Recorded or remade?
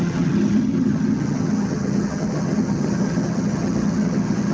remade